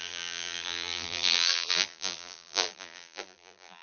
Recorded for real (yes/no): no